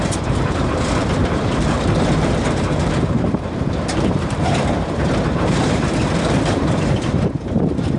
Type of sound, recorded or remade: remade